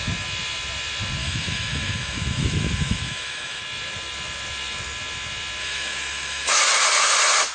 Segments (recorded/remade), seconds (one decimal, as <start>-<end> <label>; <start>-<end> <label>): 0.0-1.2 recorded; 1.2-3.6 remade; 3.6-5.6 recorded; 5.6-6.6 remade; 6.6-7.5 recorded